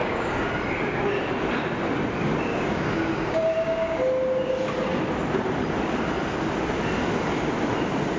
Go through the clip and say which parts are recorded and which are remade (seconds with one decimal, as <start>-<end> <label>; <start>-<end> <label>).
0.0-0.5 remade; 0.5-2.5 recorded; 2.5-4.0 remade; 4.0-8.2 recorded